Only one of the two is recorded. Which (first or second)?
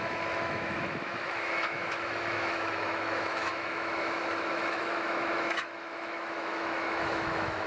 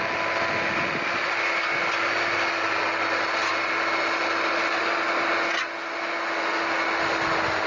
second